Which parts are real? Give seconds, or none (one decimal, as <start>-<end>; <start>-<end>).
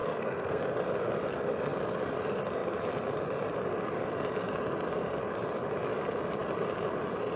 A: 0.6-7.4